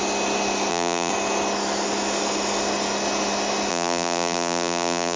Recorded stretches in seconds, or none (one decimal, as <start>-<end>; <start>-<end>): 0.0-0.7; 1.1-3.7